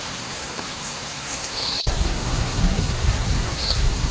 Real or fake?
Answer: fake